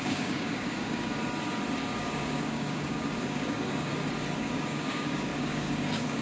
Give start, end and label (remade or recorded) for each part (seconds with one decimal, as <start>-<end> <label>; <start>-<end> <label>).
0.0-1.1 remade; 1.1-2.0 recorded; 2.0-3.9 remade; 3.9-4.4 recorded; 4.4-6.2 remade